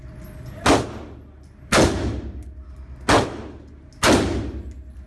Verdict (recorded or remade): recorded